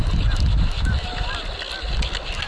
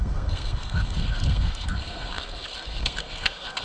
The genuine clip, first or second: first